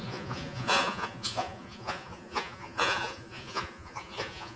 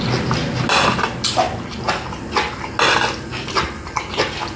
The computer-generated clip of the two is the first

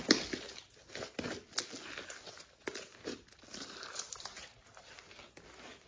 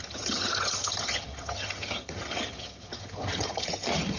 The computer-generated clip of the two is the second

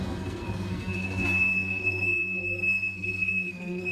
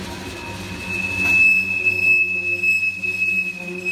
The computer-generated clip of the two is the first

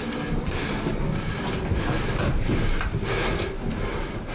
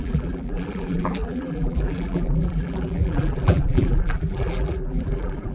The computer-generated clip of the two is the second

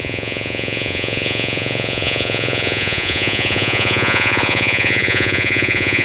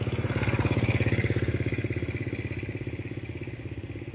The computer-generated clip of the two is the first